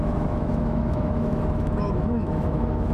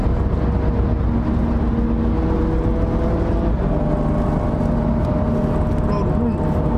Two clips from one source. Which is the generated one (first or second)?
first